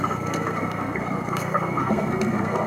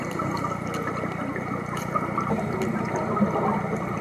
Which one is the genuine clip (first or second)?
second